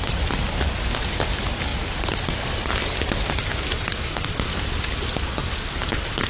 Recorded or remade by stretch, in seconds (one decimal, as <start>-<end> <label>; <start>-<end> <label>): 0.0-6.3 recorded